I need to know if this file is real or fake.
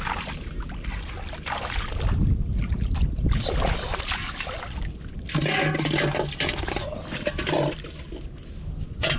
real